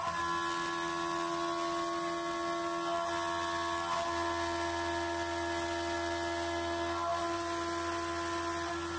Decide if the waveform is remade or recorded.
recorded